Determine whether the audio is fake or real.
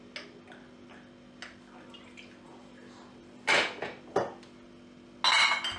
real